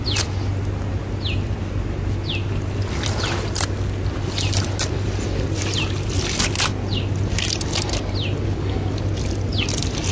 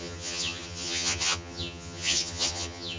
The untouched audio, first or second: first